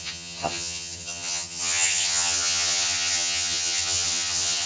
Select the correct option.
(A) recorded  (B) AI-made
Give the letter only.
B